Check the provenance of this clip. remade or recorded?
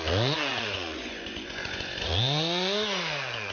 remade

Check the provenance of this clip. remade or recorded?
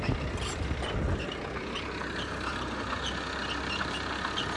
recorded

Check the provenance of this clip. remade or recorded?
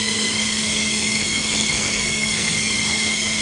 remade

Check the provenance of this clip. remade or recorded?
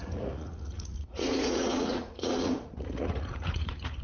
remade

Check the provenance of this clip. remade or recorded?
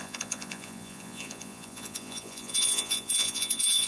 remade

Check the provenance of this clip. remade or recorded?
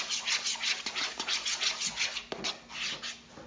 recorded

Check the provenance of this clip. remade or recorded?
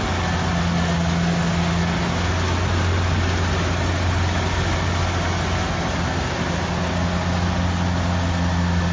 recorded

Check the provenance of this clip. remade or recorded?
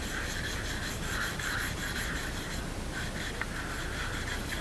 recorded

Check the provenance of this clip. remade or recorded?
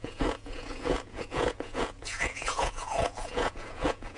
remade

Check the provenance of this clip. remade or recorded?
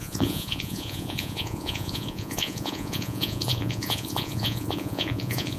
remade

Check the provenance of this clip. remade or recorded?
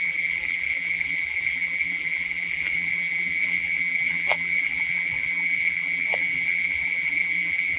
remade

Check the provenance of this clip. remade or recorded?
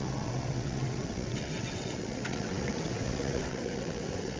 remade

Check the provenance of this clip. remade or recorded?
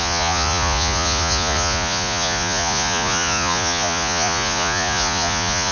remade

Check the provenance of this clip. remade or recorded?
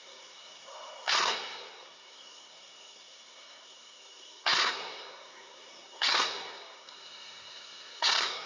remade